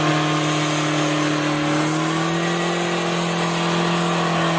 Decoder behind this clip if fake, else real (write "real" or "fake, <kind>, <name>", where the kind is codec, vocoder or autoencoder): real